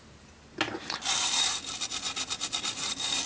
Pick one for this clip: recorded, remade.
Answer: recorded